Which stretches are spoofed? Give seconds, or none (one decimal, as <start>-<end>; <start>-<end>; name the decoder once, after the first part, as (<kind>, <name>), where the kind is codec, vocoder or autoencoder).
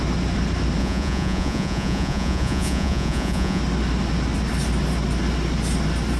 0.8-3.6 (vocoder, Vocos)